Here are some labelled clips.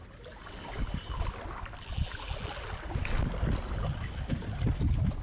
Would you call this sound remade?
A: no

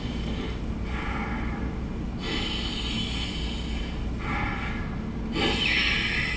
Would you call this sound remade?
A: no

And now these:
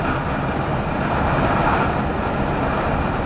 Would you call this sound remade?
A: no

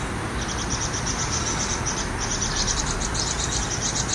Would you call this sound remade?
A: no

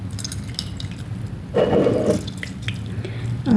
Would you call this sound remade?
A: no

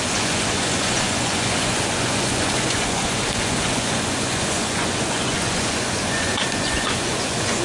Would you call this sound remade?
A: yes